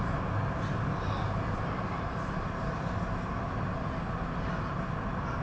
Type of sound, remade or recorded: recorded